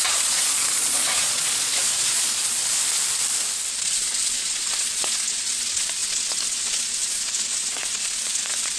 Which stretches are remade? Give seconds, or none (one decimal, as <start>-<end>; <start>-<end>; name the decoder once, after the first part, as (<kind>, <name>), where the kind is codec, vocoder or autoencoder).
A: 0.0-2.6 (vocoder, Vocos); 3.7-8.8